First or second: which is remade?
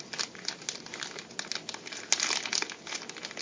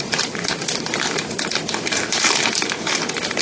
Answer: second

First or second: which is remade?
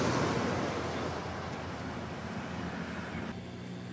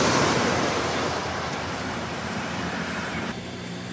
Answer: second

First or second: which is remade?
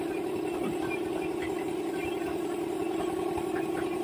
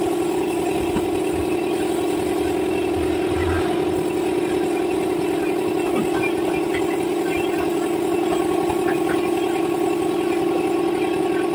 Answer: first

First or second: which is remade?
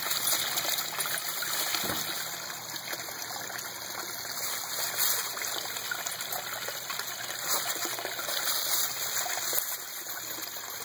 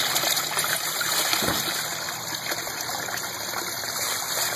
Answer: second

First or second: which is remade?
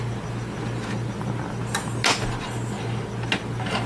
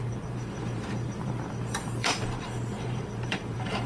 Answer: second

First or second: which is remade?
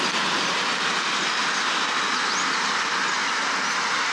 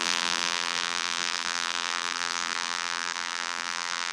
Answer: second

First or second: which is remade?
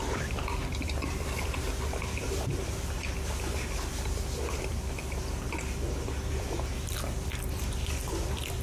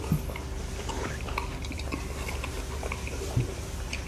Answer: first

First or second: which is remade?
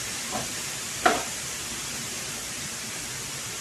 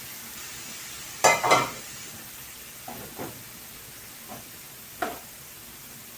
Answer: first